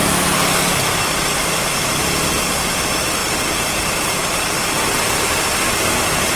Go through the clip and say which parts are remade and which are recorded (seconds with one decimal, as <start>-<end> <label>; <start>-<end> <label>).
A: 0.0-6.4 recorded